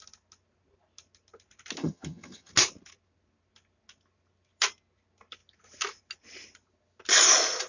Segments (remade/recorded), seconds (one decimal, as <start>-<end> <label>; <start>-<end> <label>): 0.0-1.8 recorded; 1.8-2.5 remade; 2.5-7.7 recorded